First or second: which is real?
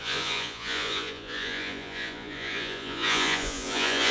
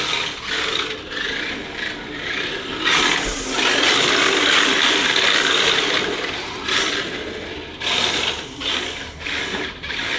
second